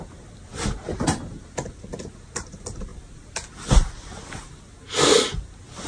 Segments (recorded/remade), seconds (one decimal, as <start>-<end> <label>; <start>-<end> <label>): 0.0-5.9 recorded